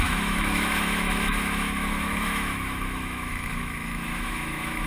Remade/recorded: remade